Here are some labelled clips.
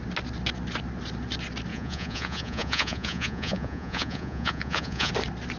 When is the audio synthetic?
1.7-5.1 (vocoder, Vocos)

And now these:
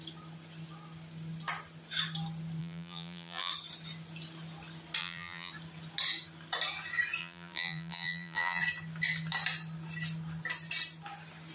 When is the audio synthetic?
2.6-3.5 (vocoder, BigVGAN v2); 5.0-5.5; 7.2-8.6

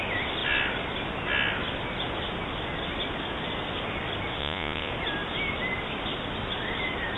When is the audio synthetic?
4.4-4.9 (vocoder, Vocos)

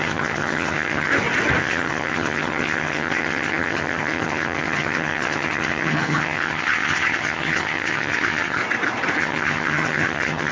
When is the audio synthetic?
0.0-1.1 (vocoder, HiFi-GAN); 1.6-8.6; 9.2-10.5

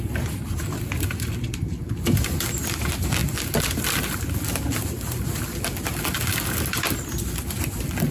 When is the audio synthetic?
none

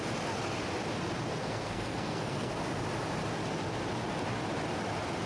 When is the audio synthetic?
1.4-2.5 (codec, SNAC)